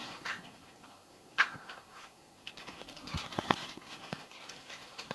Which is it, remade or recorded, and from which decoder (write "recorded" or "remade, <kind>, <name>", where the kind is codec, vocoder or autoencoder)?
remade, codec, SNAC